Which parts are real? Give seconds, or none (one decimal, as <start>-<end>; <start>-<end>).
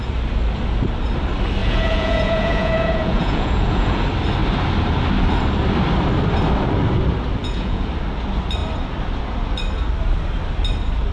0.0-1.6; 4.0-7.4; 7.9-11.1